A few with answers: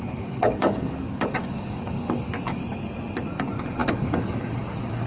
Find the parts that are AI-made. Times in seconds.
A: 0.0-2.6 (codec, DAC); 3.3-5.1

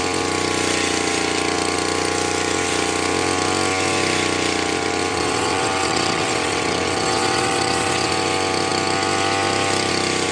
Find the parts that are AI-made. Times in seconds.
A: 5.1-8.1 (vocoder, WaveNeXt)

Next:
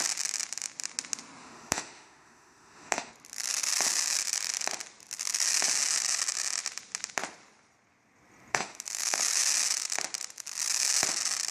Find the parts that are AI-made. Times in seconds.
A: 1.4-3.1 (autoencoder, DAC-VAE); 8.5-9.2